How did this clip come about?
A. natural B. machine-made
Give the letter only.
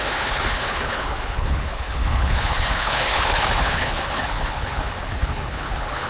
B